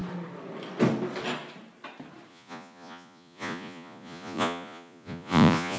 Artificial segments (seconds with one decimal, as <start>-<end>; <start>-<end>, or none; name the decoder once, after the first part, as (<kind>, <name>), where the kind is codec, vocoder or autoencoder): 2.3-5.8 (vocoder, Vocos)